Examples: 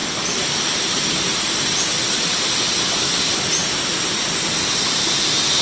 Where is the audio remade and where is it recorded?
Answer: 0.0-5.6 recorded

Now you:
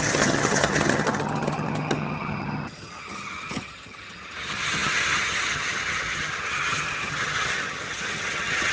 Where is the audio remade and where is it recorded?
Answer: 0.0-8.7 remade

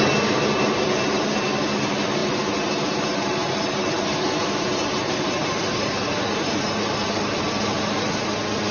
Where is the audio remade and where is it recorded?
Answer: 0.0-2.2 recorded; 2.2-7.4 remade; 7.4-8.7 recorded

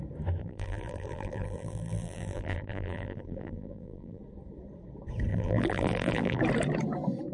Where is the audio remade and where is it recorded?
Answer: 0.0-0.4 recorded; 0.4-4.2 remade; 4.2-5.3 recorded; 5.3-6.4 remade; 6.4-7.3 recorded